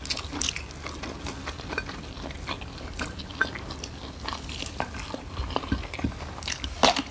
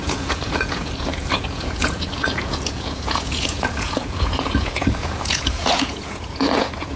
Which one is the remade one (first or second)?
second